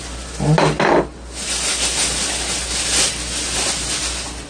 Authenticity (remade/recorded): recorded